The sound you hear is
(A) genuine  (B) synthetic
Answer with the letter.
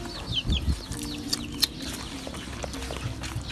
A